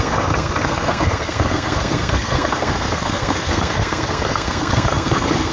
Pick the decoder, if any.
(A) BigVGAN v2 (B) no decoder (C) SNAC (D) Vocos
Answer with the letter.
C